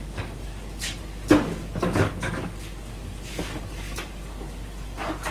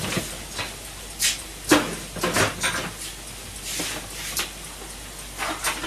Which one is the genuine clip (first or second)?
second